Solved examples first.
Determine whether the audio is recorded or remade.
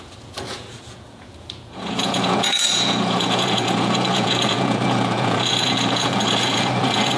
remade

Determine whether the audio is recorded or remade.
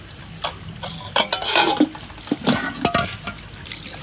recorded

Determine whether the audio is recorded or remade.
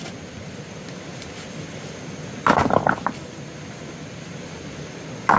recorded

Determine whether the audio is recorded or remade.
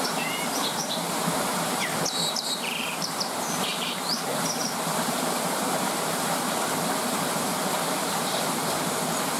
remade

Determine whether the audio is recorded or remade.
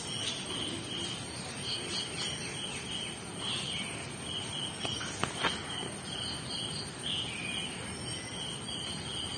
recorded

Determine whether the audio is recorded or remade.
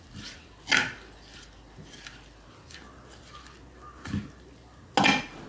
recorded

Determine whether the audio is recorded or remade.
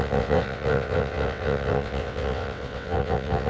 remade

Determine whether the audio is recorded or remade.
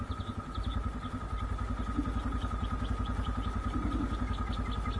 recorded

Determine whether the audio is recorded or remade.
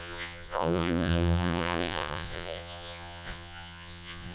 remade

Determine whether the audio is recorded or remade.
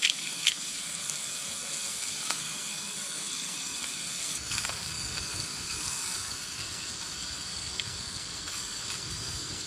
remade